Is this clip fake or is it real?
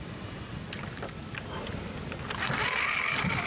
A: real